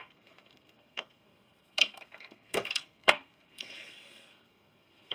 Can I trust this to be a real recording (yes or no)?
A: no